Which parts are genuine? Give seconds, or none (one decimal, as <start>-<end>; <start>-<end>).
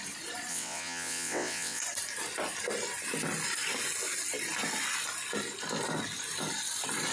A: 0.0-0.5; 1.8-7.1